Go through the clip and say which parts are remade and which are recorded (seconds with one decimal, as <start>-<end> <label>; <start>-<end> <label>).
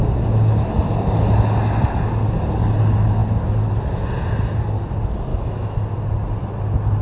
0.0-5.3 recorded; 5.3-5.8 remade; 5.8-7.0 recorded